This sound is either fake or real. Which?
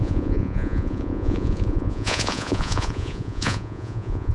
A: fake